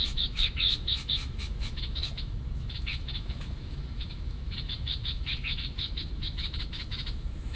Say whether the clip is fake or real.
fake